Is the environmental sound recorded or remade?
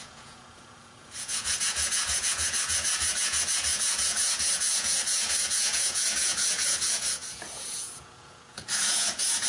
remade